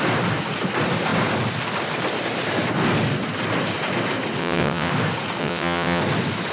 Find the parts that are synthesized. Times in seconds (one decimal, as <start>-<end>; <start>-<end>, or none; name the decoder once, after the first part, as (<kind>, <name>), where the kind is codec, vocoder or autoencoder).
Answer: 4.4-4.9 (vocoder, WaveNeXt); 5.4-6.0